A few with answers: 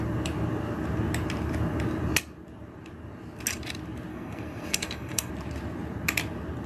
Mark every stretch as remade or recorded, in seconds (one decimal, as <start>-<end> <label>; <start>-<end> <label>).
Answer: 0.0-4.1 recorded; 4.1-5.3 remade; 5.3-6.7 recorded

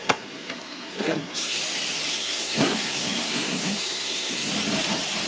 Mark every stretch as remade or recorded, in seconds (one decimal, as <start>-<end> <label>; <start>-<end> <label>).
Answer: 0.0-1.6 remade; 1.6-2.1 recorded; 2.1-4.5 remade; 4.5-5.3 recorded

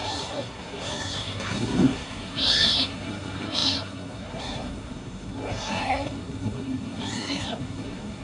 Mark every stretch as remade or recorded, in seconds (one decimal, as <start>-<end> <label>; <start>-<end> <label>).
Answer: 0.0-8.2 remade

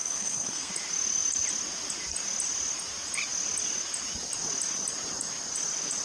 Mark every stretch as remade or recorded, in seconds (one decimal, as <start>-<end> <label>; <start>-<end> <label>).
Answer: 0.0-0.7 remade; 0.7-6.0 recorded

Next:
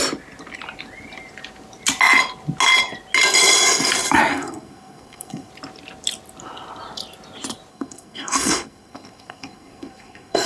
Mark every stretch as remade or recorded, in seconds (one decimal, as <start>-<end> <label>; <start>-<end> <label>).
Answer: 0.0-4.3 recorded; 4.3-5.5 remade; 5.5-7.7 recorded; 7.7-10.5 remade

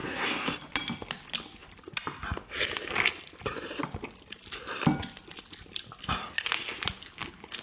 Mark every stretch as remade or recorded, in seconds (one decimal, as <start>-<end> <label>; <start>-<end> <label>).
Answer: 0.0-0.5 remade; 0.5-7.6 recorded

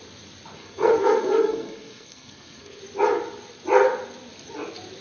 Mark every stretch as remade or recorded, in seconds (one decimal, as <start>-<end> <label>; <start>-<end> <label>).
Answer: 0.0-0.6 recorded; 0.6-2.8 remade; 2.8-5.0 recorded

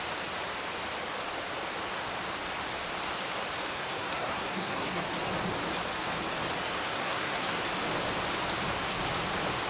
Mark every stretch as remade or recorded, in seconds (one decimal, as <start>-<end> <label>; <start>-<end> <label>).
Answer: 0.0-3.7 recorded; 3.7-5.0 remade; 5.0-6.8 recorded; 6.8-7.6 remade; 7.6-9.7 recorded